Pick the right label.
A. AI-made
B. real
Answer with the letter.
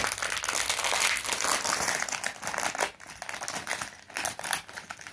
B